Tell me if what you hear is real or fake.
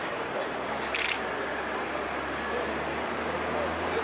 real